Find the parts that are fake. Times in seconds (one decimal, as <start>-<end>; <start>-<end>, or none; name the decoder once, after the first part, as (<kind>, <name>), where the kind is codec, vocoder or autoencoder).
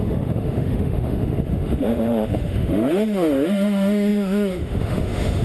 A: 0.0-5.4 (autoencoder, DAC-VAE)